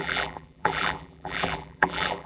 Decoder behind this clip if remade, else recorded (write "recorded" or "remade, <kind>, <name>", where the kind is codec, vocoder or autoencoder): remade, vocoder, BigVGAN v2